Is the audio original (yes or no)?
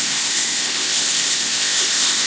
no